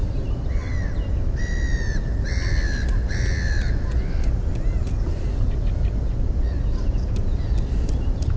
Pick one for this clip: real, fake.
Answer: real